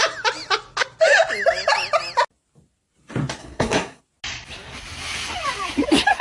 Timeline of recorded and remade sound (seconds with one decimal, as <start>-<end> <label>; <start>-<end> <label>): 0.0-3.4 recorded; 3.4-4.0 remade; 4.0-6.2 recorded